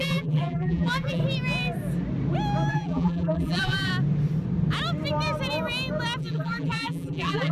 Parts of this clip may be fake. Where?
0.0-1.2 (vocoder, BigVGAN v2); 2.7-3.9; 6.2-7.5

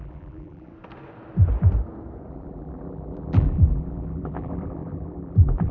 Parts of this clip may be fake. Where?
0.0-0.7 (vocoder, BigVGAN v2); 2.3-5.7